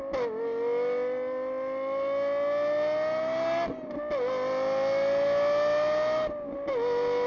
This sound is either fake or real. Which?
real